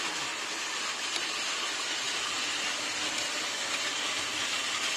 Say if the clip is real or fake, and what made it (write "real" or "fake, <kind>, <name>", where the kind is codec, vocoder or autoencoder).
real